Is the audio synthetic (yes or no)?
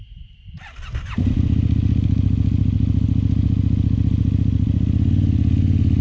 no